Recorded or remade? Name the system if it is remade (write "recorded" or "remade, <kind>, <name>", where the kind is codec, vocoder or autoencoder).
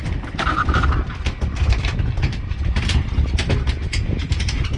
recorded